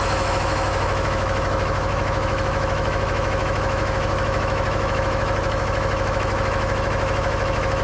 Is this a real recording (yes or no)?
no